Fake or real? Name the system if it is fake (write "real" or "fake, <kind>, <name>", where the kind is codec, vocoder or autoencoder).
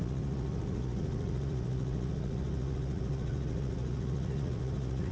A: fake, vocoder, Vocos